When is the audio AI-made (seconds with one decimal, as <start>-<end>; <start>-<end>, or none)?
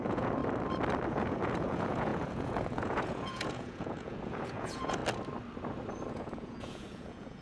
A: 0.0-0.4; 1.1-5.0; 6.1-7.4